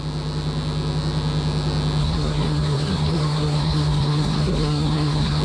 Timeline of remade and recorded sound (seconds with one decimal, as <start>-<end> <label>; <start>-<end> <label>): 0.0-2.0 recorded; 2.0-5.4 remade